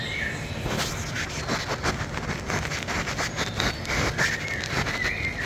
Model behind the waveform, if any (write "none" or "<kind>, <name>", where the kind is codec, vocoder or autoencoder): none